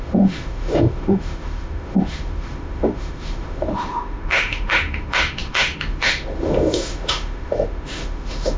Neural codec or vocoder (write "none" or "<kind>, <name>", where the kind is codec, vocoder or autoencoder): autoencoder, DAC-VAE